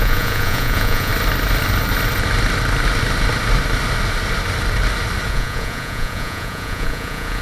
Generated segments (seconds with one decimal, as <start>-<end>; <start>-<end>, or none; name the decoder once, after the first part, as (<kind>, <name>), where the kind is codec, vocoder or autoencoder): 0.0-1.1 (vocoder, Vocos); 5.3-7.4